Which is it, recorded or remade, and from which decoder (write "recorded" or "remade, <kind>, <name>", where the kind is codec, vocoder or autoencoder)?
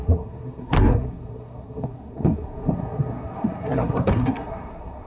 remade, codec, SNAC